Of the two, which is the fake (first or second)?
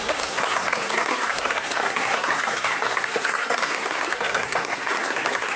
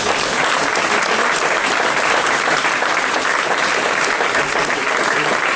first